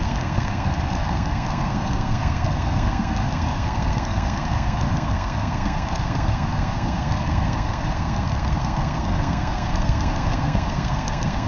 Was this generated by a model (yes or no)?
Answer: yes